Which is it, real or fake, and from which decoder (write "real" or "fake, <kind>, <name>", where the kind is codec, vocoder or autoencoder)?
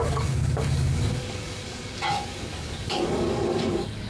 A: fake, codec, DAC